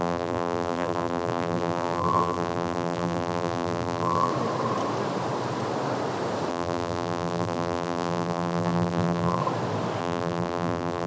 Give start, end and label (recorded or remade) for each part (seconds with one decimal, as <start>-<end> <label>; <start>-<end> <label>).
0.0-4.3 remade; 4.3-6.5 recorded; 6.5-9.4 remade; 9.4-10.0 recorded; 10.0-11.1 remade